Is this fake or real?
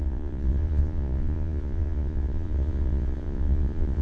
fake